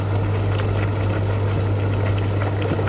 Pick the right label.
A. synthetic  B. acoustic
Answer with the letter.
B